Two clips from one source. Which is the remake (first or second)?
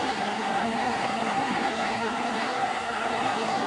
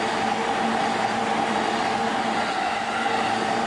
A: first